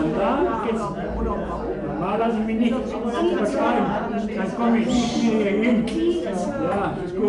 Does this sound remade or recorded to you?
recorded